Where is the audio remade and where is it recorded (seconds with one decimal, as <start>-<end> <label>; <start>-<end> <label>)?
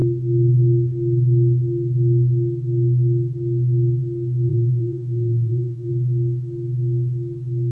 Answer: 0.0-4.5 recorded; 4.5-5.9 remade; 5.9-7.7 recorded